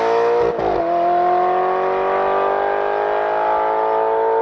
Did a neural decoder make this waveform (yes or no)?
no